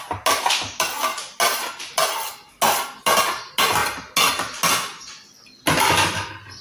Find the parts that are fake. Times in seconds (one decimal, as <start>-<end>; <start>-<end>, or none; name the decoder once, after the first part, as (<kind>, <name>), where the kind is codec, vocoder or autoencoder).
none